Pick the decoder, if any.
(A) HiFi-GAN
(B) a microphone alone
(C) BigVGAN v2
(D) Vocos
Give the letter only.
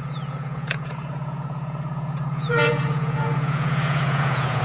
D